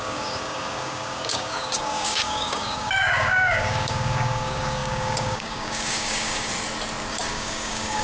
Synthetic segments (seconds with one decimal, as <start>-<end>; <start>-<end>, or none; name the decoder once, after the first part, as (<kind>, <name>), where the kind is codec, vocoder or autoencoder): 0.0-6.5 (codec, DAC); 7.1-8.0